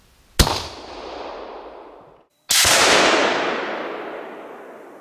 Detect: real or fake real